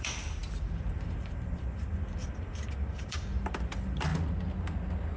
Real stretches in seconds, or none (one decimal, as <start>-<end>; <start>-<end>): 4.1-5.2